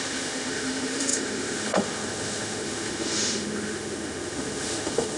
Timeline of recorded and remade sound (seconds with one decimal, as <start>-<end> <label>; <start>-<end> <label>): 0.0-5.2 remade